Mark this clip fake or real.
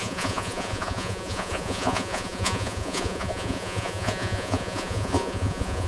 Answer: fake